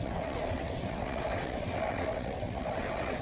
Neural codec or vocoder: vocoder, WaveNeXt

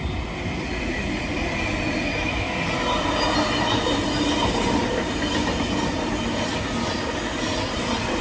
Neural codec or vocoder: none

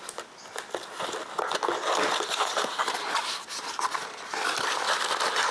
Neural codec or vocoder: none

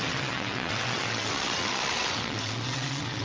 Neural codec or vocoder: vocoder, WaveNeXt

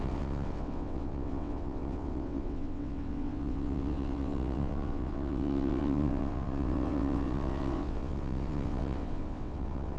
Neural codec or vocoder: vocoder, WaveNeXt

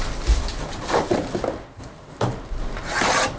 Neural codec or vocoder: none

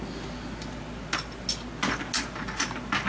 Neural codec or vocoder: none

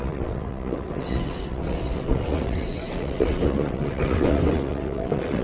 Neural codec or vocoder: vocoder, WaveNeXt